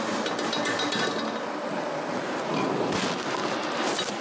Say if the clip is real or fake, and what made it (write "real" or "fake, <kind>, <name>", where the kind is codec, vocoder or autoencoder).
real